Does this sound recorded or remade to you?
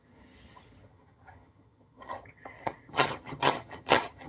remade